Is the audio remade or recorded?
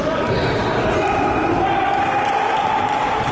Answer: remade